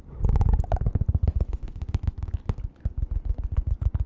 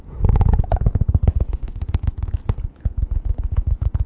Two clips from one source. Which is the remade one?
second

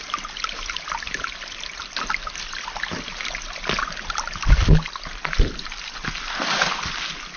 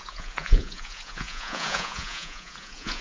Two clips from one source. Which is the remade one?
second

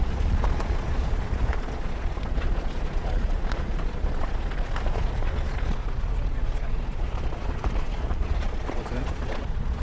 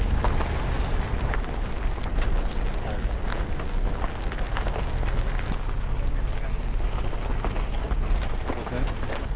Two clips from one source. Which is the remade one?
first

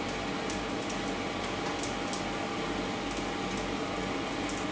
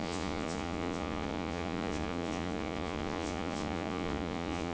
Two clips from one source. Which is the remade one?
second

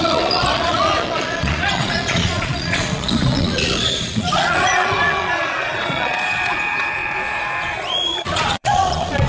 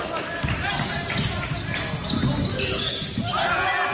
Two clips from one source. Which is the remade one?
first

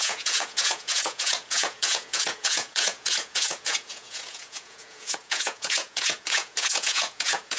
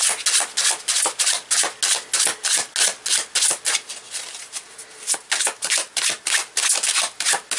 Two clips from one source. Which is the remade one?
first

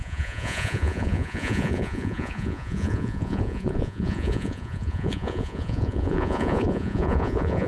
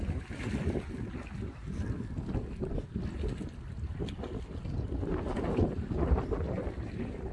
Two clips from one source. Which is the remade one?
first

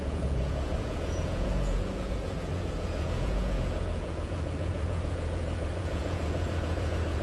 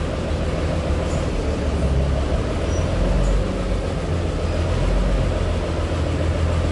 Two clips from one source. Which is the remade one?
first